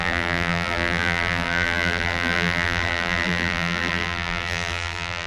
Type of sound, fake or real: fake